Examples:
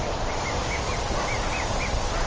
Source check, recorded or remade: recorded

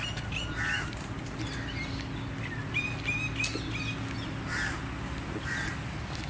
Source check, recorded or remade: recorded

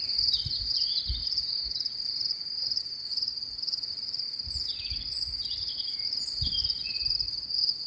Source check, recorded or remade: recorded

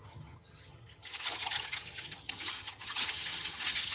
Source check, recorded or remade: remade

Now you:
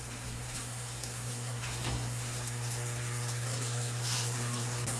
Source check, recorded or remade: remade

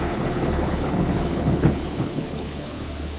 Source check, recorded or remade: remade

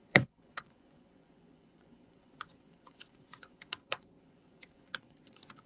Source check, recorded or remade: remade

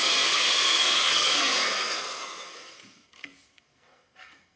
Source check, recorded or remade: remade